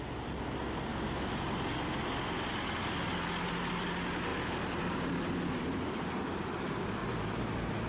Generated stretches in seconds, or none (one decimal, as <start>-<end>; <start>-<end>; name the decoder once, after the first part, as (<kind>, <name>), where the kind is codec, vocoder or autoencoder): none